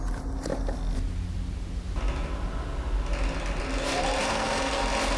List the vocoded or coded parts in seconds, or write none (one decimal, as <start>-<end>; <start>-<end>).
4.3-4.8